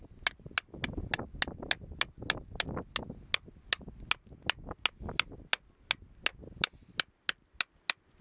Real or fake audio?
real